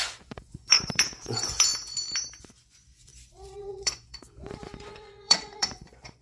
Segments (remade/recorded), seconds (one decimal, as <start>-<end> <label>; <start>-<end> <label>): 0.0-1.7 remade; 1.7-2.4 recorded; 2.4-6.2 remade